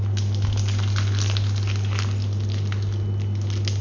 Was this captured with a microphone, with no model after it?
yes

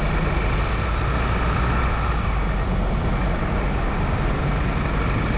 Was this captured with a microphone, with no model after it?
yes